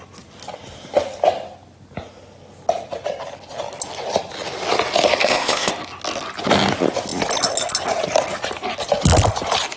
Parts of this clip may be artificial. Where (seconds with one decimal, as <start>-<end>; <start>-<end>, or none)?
5.2-5.7